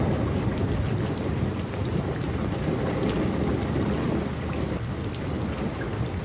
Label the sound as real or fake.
real